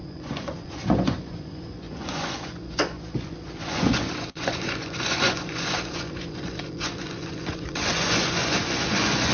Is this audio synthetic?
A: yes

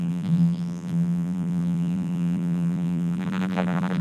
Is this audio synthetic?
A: yes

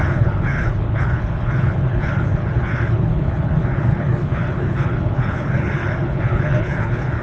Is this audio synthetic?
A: yes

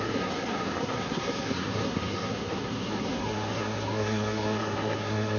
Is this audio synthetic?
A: yes